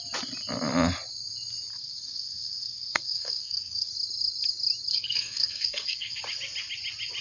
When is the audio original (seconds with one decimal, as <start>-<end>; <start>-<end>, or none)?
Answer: 0.0-1.7; 3.9-4.9; 6.2-7.2